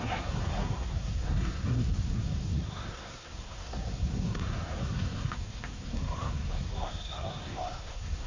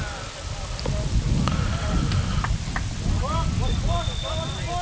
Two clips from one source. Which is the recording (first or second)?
second